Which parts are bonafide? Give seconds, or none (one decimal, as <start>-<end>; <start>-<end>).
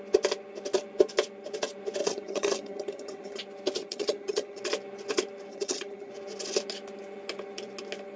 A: 0.0-2.0; 3.4-3.8; 4.6-5.5; 6.1-8.2